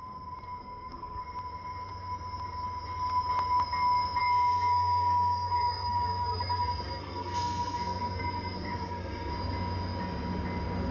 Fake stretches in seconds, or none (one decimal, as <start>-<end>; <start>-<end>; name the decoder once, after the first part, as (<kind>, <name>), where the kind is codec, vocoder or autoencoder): 0.6-1.2 (codec, SNAC); 4.2-9.3